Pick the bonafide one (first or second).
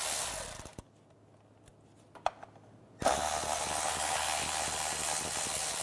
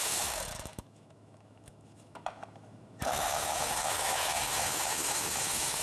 first